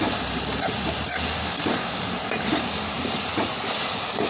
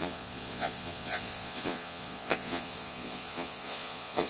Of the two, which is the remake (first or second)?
second